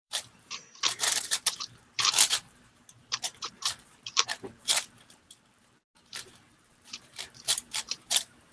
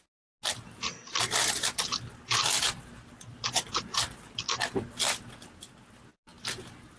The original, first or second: second